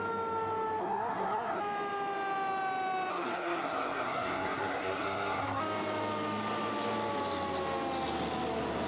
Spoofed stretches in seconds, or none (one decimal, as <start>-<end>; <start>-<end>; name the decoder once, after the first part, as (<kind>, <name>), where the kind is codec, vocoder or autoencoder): 0.8-1.6 (codec, SNAC); 3.1-5.6